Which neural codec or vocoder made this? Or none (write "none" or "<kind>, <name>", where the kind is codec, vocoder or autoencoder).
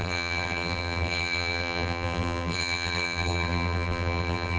vocoder, BigVGAN v2